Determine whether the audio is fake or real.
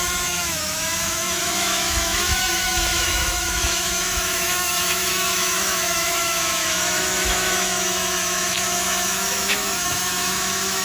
fake